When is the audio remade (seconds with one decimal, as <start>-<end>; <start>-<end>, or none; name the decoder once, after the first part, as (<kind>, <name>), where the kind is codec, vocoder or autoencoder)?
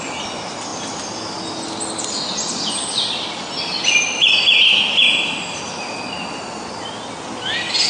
none